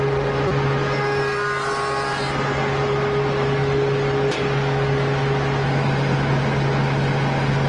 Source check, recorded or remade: recorded